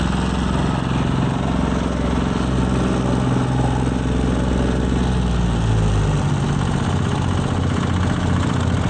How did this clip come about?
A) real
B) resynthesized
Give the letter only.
A